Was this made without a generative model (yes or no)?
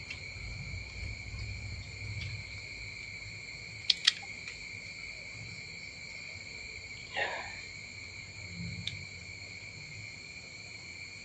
yes